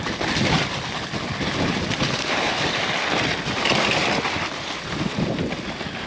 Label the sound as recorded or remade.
recorded